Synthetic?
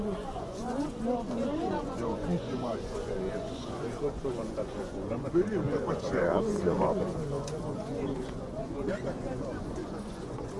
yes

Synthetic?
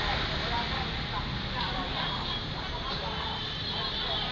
no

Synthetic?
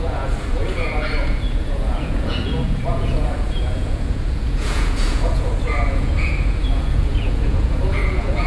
yes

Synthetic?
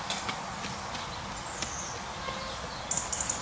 no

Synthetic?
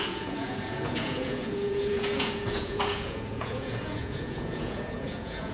yes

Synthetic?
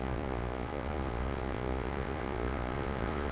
yes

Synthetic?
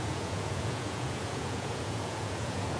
yes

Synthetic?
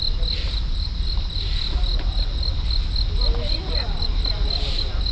no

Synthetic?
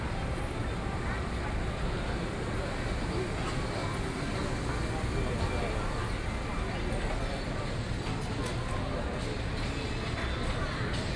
no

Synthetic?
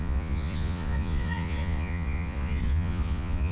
yes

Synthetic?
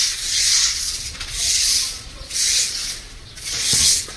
yes